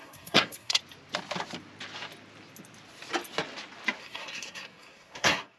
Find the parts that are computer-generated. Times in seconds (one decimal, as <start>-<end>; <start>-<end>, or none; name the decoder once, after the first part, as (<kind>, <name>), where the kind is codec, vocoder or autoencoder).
0.0-0.8 (codec, SNAC); 4.0-5.6